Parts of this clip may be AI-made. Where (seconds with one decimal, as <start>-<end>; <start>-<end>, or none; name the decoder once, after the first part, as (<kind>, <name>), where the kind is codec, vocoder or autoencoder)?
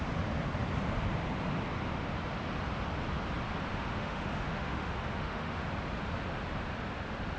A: 3.7-5.7 (autoencoder, DAC-VAE)